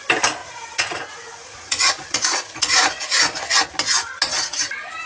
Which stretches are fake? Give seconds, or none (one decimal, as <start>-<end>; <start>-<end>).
0.4-3.5